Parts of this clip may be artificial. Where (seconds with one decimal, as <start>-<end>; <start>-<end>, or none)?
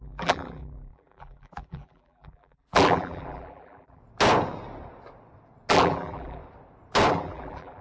0.0-4.0; 5.7-6.4; 7.1-7.8